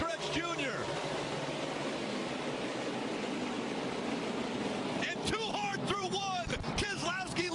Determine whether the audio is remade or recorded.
remade